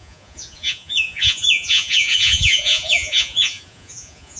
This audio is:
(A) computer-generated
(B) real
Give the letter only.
A